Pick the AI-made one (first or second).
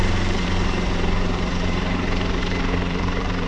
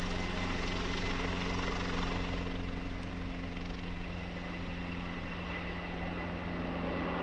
first